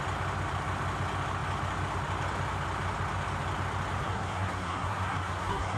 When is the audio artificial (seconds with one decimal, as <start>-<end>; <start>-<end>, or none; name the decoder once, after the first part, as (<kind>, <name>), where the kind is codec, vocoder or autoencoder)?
4.0-5.8 (codec, SNAC)